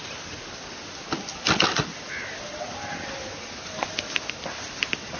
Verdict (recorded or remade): recorded